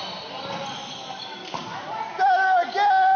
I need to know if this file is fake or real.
real